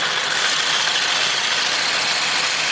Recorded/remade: recorded